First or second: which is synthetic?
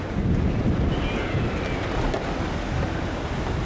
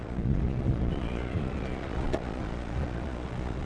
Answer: second